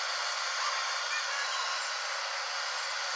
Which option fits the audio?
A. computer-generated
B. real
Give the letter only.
A